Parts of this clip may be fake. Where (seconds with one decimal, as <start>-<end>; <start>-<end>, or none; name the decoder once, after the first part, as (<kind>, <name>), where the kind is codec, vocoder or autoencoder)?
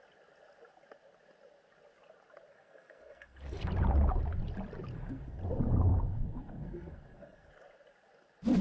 2.5-3.7 (codec, SNAC); 4.9-5.4; 5.9-7.5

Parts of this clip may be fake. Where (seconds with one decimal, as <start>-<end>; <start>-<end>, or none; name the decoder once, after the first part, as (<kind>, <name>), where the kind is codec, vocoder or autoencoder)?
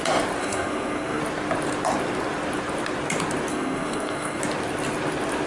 0.4-1.2 (codec, SNAC); 3.5-4.4